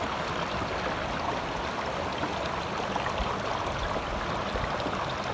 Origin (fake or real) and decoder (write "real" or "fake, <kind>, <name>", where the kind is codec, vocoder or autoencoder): real